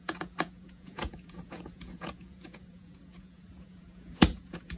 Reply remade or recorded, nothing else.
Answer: remade